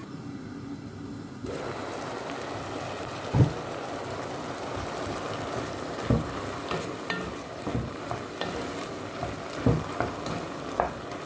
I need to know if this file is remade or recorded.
recorded